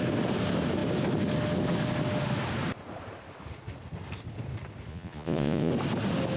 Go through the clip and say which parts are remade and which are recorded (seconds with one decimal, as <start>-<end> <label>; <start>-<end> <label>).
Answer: 0.0-4.9 recorded; 4.9-5.7 remade; 5.7-6.4 recorded